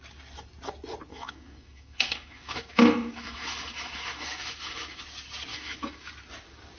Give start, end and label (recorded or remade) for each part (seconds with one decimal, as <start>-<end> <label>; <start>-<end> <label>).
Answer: 0.0-1.1 recorded; 1.1-5.0 remade; 5.0-5.5 recorded; 5.5-6.1 remade; 6.1-6.8 recorded